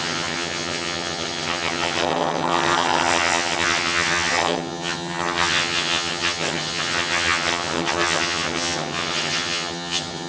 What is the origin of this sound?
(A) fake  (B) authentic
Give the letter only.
A